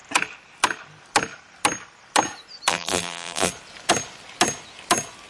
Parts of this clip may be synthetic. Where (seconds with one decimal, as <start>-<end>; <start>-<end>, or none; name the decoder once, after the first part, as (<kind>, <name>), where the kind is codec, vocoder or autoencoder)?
2.7-3.5 (vocoder, BigVGAN v2)